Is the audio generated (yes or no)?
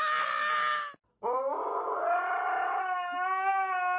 no